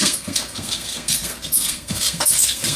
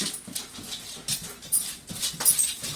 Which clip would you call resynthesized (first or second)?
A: first